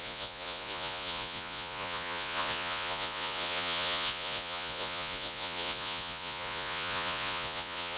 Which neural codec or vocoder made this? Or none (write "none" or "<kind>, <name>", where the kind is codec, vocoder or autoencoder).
vocoder, Vocos